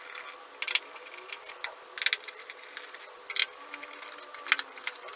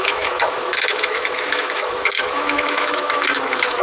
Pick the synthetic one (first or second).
second